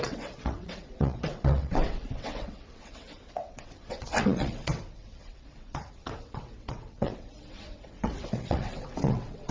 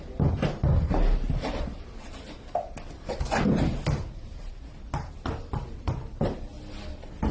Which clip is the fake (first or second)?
first